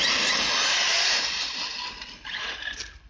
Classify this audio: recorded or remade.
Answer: recorded